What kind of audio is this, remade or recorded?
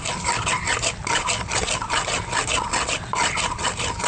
recorded